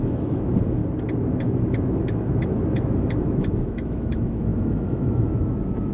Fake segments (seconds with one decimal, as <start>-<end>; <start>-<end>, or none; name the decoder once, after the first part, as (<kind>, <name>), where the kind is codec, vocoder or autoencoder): 0.0-0.8 (autoencoder, DAC-VAE); 1.4-5.9